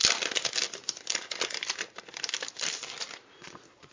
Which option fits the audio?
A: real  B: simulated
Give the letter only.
A